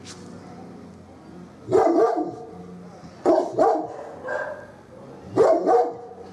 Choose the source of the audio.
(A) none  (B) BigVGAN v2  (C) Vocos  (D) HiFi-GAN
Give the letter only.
A